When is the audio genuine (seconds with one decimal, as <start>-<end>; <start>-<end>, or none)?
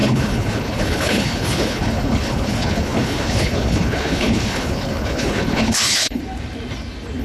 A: 6.2-7.2